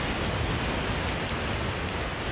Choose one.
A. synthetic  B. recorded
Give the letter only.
B